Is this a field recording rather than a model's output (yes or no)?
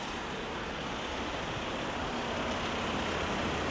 yes